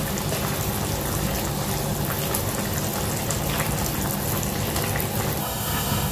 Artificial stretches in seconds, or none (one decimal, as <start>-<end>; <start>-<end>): 5.4-6.1